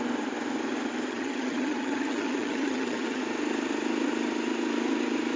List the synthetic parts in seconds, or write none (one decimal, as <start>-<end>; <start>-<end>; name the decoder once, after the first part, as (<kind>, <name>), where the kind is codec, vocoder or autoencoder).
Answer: 1.1-3.2 (vocoder, HiFi-GAN)